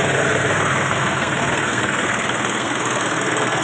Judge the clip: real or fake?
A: fake